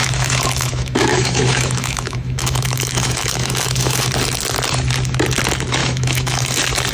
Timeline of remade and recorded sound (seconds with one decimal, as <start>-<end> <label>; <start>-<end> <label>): 0.0-4.1 remade; 4.1-5.8 recorded; 5.8-6.4 remade; 6.4-6.9 recorded